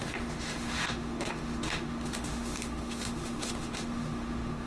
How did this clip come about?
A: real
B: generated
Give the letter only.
B